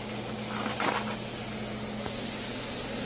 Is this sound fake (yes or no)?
no